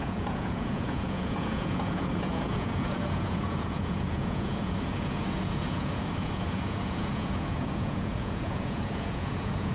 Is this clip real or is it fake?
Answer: fake